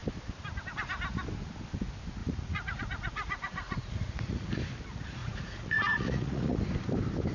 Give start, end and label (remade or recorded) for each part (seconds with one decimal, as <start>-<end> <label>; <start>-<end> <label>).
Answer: 0.0-2.2 recorded; 2.2-4.5 remade; 4.5-5.2 recorded; 5.2-6.6 remade; 6.6-7.3 recorded